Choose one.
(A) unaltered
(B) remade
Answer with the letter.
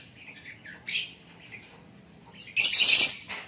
A